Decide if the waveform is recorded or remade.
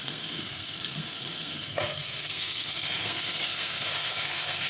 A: remade